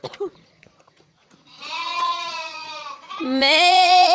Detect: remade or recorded remade